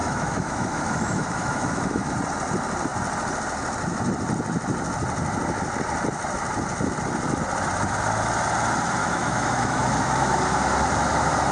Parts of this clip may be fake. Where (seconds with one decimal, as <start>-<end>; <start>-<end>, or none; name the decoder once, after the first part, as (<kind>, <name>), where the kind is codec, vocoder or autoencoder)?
0.0-2.1 (autoencoder, DAC-VAE); 9.0-10.4